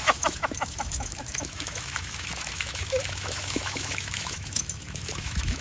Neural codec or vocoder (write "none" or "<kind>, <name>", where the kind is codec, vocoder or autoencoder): autoencoder, DAC-VAE